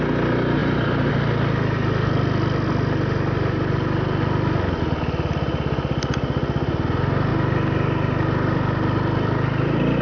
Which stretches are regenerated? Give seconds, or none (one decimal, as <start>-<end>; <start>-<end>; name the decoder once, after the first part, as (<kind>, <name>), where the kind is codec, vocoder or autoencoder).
0.6-1.1 (vocoder, BigVGAN v2); 7.3-10.0